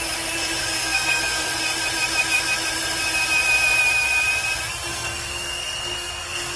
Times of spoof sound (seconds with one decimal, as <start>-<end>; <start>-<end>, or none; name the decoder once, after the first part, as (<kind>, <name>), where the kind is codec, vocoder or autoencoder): 0.6-1.6 (codec, SNAC); 4.9-6.6